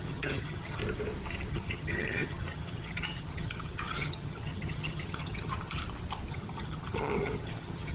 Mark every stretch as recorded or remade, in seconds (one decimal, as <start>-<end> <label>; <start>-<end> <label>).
0.0-0.8 remade; 0.8-1.5 recorded; 1.5-5.8 remade; 5.8-6.3 recorded; 6.3-7.9 remade